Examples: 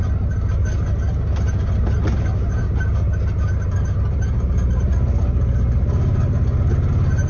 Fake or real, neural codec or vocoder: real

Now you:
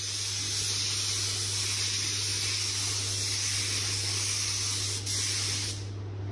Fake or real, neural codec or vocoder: real